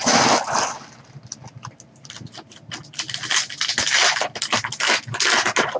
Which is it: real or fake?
real